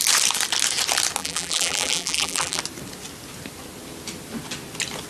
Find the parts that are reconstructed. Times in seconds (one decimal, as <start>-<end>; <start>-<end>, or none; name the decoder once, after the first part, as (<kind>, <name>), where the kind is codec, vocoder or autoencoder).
1.2-2.6 (vocoder, BigVGAN v2)